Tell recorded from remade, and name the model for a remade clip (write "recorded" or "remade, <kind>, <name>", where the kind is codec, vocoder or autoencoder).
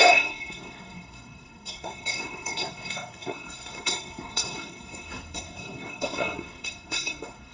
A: remade, codec, SNAC